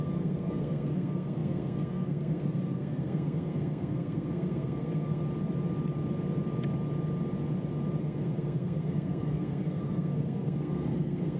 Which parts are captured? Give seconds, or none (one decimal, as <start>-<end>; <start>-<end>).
5.2-8.0